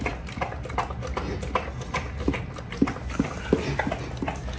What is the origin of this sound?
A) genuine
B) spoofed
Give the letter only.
A